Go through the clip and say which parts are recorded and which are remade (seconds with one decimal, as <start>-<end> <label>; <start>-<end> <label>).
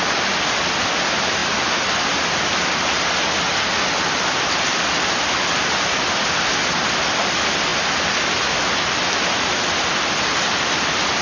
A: 0.0-11.2 recorded